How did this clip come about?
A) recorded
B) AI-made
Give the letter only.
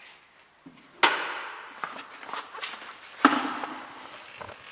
A